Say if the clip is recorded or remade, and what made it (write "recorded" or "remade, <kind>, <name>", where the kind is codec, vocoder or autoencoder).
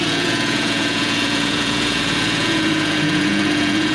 remade, vocoder, Vocos